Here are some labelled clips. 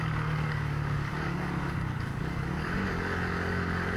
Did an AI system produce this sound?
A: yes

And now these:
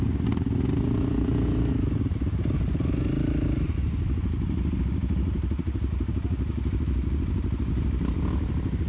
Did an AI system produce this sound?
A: no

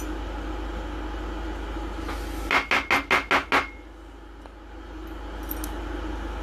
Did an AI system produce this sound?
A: no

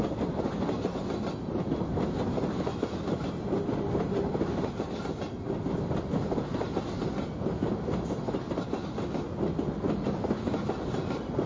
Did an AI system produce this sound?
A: no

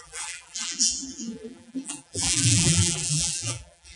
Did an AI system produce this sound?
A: yes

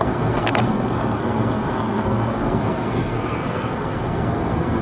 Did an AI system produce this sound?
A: yes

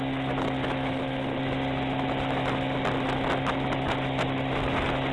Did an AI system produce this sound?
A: no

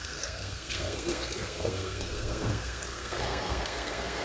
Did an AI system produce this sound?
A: yes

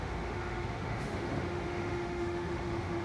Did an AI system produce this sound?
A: yes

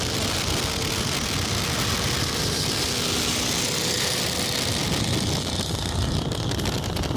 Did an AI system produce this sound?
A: no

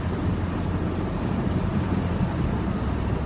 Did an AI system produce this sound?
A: no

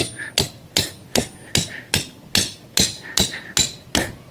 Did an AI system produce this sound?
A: no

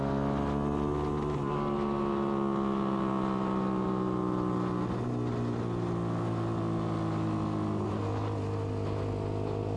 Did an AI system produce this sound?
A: no